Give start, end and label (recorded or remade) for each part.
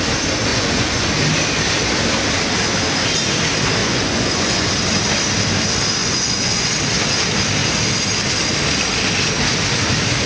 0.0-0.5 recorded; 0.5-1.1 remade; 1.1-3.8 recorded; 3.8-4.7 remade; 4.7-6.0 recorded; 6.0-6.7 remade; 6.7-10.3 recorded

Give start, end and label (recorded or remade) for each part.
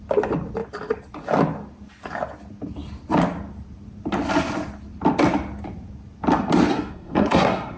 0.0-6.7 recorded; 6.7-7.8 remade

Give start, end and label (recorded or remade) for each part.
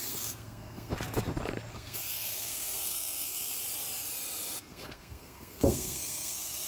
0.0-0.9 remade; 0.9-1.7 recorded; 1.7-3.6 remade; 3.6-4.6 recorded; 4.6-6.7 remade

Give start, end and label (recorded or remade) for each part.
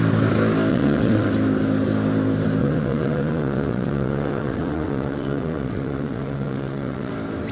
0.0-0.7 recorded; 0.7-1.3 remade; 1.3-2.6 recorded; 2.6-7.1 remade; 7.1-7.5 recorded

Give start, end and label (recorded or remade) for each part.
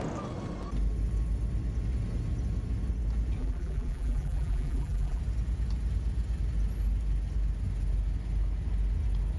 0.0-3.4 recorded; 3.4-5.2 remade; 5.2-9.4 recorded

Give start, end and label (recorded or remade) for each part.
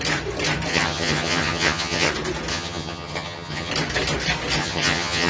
0.0-0.7 recorded; 0.7-2.1 remade; 2.1-2.5 recorded; 2.5-3.7 remade; 3.7-4.6 recorded; 4.6-5.3 remade